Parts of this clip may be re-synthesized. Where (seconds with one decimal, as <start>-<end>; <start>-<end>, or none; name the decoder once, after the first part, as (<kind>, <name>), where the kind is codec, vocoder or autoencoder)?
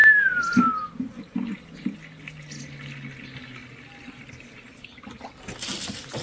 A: none